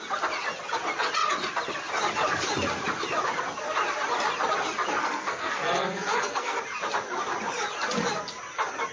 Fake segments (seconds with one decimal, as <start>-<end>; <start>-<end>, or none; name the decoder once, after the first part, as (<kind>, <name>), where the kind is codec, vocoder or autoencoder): 5.0-6.6 (codec, SNAC)